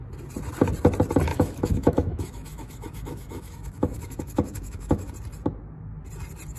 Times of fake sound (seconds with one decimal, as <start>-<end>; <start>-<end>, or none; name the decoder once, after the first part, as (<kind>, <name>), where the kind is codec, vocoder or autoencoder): 1.3-5.1 (autoencoder, DAC-VAE)